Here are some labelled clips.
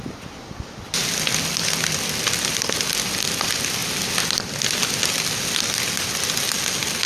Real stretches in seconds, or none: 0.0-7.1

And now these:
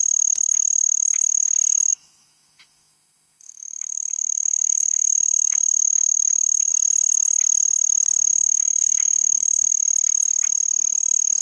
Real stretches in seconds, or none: 0.0-1.9; 6.7-8.3; 9.7-11.4